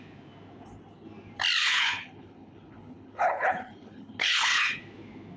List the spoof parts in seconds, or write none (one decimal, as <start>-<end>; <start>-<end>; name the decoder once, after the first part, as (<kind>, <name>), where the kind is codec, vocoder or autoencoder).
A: 1.6-4.8 (codec, HILCodec)

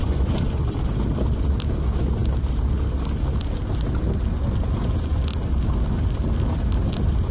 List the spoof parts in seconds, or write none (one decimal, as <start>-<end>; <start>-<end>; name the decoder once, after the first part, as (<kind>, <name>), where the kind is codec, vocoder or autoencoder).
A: 0.0-0.6 (vocoder, Vocos)

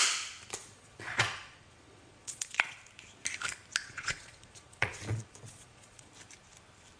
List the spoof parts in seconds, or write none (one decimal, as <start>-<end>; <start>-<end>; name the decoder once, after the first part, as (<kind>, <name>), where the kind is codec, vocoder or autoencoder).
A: 0.6-2.8 (vocoder, Vocos); 3.8-6.1

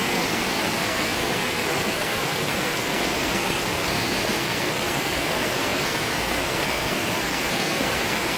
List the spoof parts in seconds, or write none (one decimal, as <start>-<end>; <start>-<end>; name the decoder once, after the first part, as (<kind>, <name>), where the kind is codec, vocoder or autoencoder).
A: 0.0-8.4 (codec, SNAC)

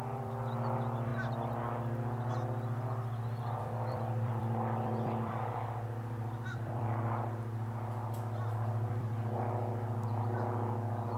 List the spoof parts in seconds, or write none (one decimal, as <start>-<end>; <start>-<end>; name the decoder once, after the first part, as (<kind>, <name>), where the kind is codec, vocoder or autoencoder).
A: 0.0-1.1 (vocoder, BigVGAN v2); 2.3-11.2

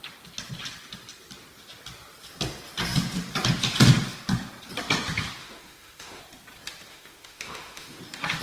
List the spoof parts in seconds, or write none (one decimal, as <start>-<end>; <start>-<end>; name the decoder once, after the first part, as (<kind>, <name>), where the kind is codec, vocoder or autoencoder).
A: 5.4-6.2 (autoencoder, DAC-VAE); 6.9-8.0

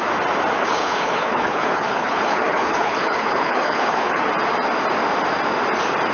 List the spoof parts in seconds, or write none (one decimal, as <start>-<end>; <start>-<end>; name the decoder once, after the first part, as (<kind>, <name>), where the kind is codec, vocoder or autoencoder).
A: 0.6-4.3 (codec, HILCodec)

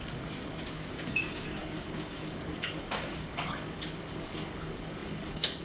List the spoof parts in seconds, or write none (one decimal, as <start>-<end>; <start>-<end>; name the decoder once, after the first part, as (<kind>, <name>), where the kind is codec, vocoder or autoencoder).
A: 0.0-5.6 (codec, DAC)